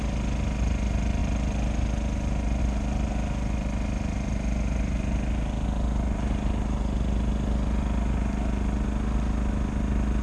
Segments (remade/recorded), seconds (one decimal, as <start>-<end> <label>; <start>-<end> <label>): 0.0-10.2 recorded